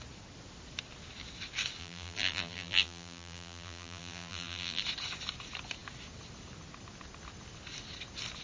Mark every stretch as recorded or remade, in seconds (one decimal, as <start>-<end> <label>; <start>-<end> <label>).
0.0-1.8 recorded; 1.8-4.8 remade; 4.8-8.4 recorded